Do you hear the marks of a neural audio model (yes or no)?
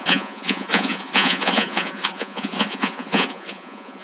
yes